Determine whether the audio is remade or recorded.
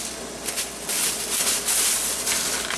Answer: recorded